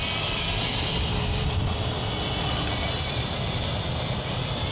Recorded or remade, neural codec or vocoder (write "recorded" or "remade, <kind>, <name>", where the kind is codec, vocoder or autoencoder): remade, vocoder, BigVGAN v2